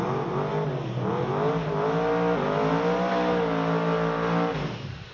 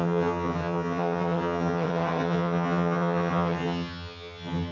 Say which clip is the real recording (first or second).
first